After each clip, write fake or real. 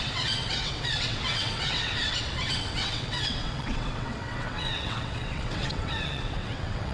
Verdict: fake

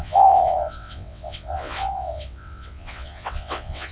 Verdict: fake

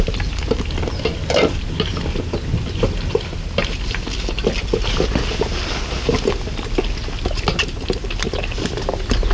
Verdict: real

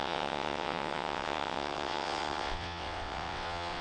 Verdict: fake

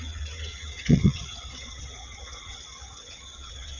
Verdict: fake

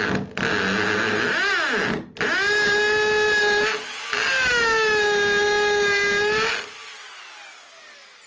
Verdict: real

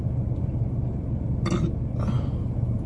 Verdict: real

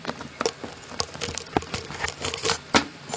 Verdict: real